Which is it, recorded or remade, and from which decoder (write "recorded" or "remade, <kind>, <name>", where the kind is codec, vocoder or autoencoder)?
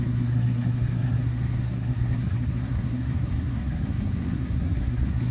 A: remade, codec, SNAC